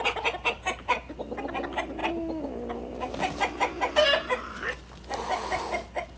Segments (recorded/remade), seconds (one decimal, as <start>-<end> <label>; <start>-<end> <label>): 0.0-6.2 recorded